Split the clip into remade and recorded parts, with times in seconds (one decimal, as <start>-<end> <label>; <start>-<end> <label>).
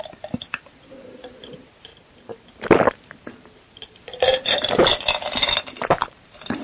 0.0-1.9 remade; 1.9-2.9 recorded; 2.9-4.9 remade; 4.9-5.6 recorded; 5.6-6.6 remade